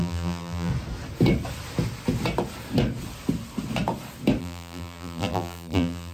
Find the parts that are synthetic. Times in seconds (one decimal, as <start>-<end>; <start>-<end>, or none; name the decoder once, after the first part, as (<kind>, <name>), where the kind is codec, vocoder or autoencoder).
0.0-0.7 (vocoder, BigVGAN v2); 4.4-6.1

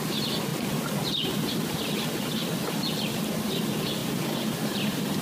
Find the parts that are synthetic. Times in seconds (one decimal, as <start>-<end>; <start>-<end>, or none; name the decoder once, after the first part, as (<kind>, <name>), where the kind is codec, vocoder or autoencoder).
0.5-3.6 (vocoder, BigVGAN v2); 4.0-5.2

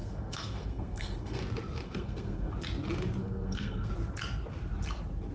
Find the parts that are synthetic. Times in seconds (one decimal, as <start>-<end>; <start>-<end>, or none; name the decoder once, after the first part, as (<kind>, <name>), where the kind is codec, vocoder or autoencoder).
0.0-1.4 (codec, SNAC); 1.8-2.5; 3.2-3.9

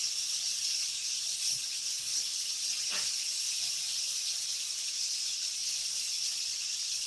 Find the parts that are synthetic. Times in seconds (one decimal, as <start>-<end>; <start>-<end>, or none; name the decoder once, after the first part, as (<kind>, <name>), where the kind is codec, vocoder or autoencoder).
0.0-2.1 (vocoder, Vocos); 4.9-5.6; 6.4-7.1

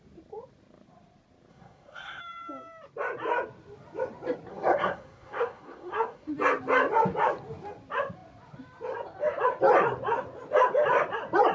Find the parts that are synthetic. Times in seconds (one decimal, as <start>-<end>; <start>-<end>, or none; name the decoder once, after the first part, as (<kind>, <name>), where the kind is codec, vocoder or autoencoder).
1.5-2.2 (codec, SNAC); 4.5-6.3